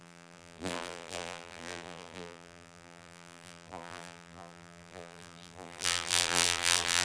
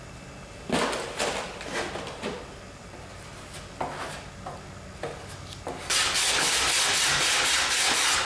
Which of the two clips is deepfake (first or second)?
first